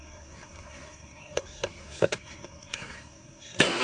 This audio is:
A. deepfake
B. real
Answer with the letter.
A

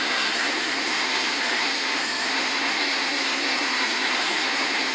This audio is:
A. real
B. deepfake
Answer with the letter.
B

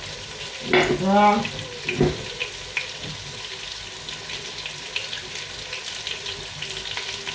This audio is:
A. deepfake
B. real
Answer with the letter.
B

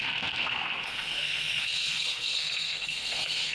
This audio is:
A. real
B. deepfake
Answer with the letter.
B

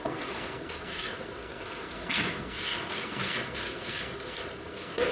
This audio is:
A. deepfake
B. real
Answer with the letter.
A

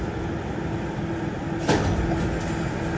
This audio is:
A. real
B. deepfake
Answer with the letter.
A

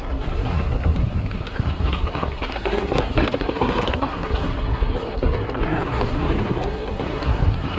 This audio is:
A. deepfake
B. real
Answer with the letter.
A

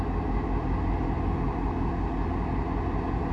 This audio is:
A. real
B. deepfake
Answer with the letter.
A